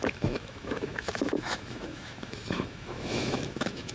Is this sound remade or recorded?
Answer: remade